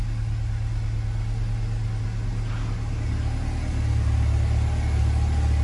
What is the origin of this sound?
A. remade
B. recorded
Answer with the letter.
B